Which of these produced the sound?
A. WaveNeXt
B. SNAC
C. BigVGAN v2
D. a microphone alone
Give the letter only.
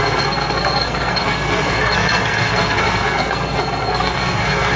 B